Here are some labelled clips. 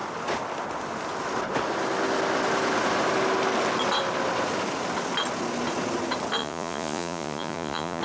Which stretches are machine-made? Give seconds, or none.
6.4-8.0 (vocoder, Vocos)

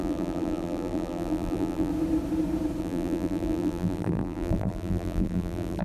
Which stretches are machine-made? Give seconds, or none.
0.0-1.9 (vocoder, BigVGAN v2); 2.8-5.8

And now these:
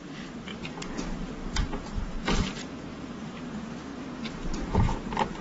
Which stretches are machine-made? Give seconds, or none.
0.5-3.4 (vocoder, BigVGAN v2)

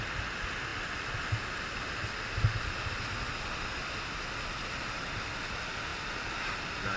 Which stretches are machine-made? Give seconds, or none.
none